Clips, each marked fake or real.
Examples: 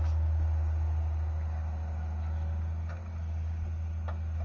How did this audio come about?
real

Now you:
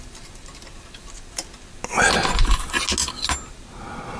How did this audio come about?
real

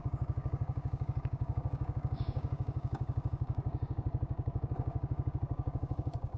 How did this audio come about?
fake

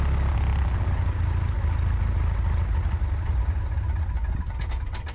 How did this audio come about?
real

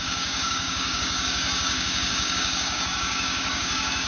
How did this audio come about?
fake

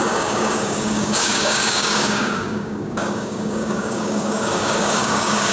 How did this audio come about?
fake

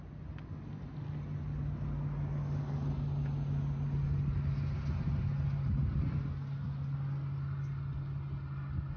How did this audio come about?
real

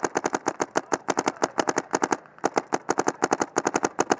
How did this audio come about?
real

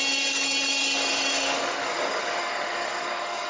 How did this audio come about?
fake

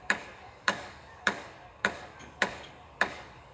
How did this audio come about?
fake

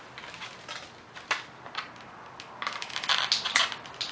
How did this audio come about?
real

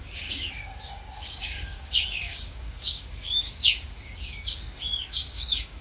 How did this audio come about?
fake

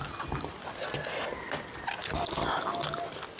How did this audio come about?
real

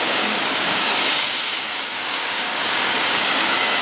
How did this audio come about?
fake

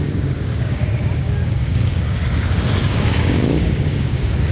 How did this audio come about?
fake